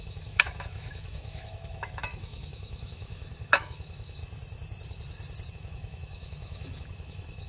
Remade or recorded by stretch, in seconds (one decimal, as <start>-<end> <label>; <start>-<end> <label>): 0.0-4.2 remade; 4.2-5.5 recorded; 5.5-7.5 remade